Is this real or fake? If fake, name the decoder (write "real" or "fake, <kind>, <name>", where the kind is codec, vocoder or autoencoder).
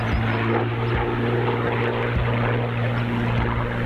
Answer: real